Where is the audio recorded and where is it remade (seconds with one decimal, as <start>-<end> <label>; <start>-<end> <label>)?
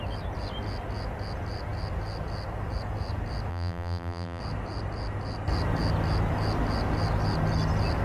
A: 0.0-3.5 recorded; 3.5-4.4 remade; 4.4-8.0 recorded